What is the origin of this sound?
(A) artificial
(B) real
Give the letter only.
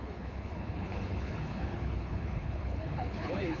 A